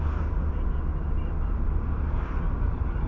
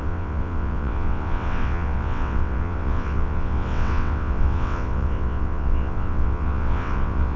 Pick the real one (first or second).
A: first